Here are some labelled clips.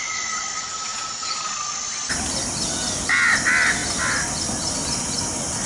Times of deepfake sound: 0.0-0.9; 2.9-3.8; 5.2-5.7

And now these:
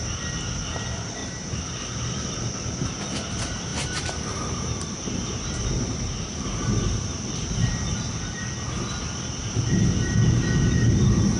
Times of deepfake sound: 1.2-1.9; 3.7-7.7

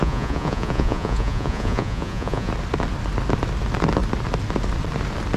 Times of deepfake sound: 0.0-2.5

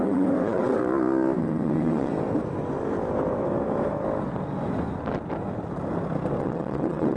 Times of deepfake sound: 0.0-0.8; 1.4-2.1; 6.4-7.2

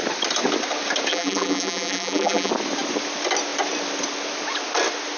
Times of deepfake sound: 1.1-2.5

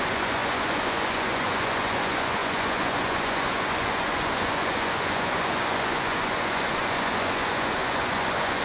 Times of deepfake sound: 0.0-8.6